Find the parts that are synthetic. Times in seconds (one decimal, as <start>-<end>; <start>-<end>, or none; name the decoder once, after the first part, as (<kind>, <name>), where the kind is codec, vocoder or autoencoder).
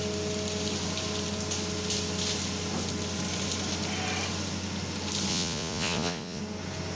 5.3-6.4 (vocoder, Vocos)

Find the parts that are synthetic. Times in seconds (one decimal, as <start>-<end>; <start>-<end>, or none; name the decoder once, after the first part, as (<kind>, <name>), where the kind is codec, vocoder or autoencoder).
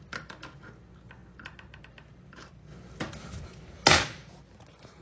none